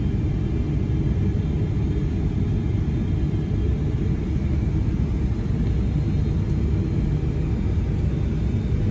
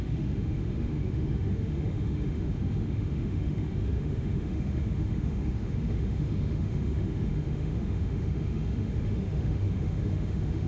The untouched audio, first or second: first